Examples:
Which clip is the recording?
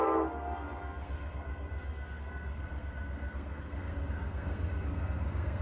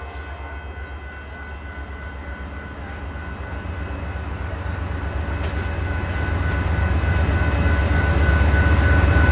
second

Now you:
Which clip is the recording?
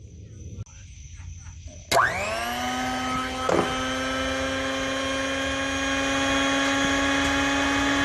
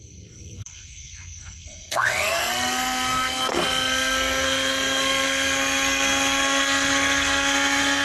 first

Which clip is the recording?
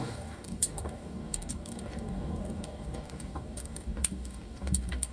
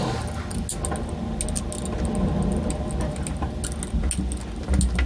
second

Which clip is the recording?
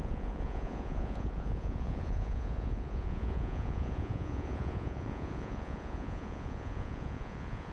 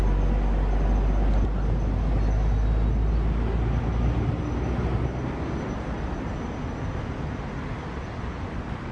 second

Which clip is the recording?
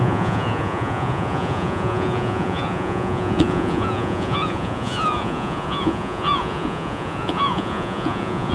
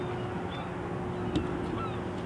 second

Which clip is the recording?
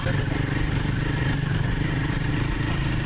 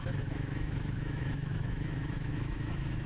first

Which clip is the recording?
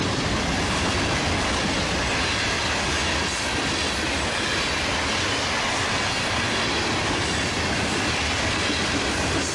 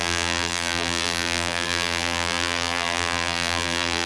first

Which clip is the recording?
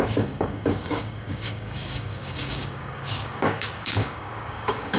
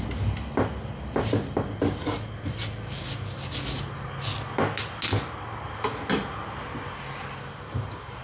second